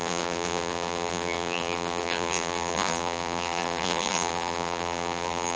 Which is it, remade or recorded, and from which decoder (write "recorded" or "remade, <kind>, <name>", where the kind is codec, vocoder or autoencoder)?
remade, vocoder, BigVGAN v2